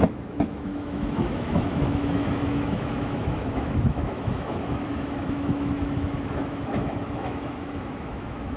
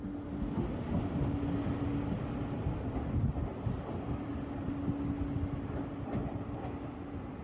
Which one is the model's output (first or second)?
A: first